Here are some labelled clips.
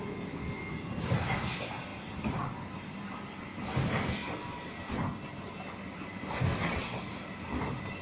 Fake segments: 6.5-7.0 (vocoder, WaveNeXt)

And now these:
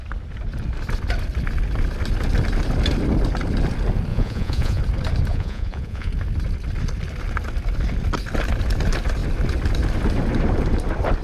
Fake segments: 4.1-4.8 (vocoder, Vocos); 5.3-6.1

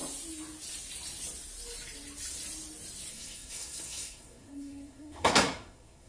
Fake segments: 3.1-6.1 (codec, SNAC)

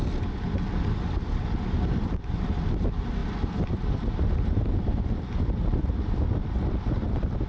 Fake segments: 3.2-7.5 (vocoder, BigVGAN v2)

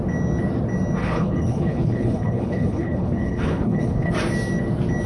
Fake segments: 1.0-4.1 (codec, HILCodec)

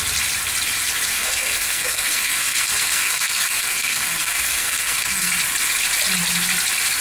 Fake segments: 1.1-5.3 (codec, SNAC)

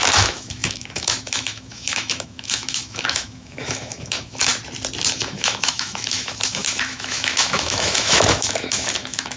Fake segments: 0.0-4.5 (autoencoder, DAC-VAE); 5.1-9.4

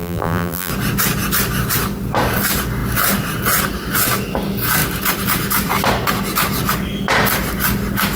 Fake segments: 0.0-0.7 (vocoder, BigVGAN v2)